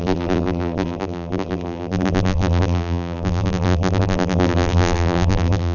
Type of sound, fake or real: fake